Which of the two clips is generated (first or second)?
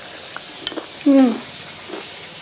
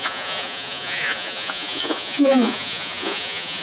second